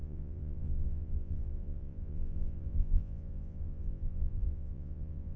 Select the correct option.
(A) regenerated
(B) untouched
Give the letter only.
A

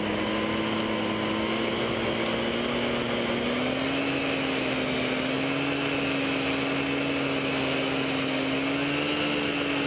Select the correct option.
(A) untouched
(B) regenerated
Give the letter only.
A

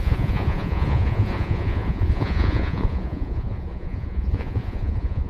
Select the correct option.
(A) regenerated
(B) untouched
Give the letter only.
A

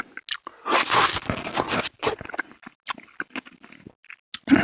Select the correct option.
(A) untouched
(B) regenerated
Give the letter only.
A